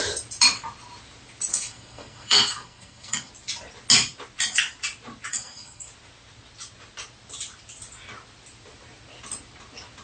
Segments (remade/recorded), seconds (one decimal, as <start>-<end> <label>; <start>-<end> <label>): 0.0-1.5 recorded; 1.5-3.3 remade; 3.3-5.3 recorded; 5.3-5.9 remade; 5.9-10.0 recorded